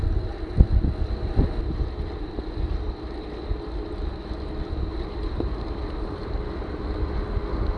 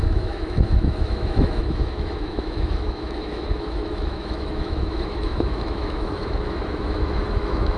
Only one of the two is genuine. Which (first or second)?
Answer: first